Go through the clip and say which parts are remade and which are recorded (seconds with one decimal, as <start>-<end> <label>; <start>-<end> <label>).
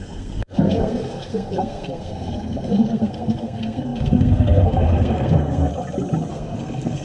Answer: 0.0-5.7 remade; 5.7-6.3 recorded; 6.3-7.0 remade